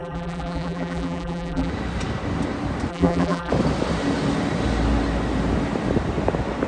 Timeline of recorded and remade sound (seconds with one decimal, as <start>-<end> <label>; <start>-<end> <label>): 0.0-1.7 remade; 1.7-2.9 recorded; 2.9-3.5 remade; 3.5-6.7 recorded